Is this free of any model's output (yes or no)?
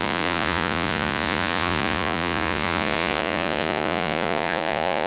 no